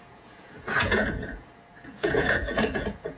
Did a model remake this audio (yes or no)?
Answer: yes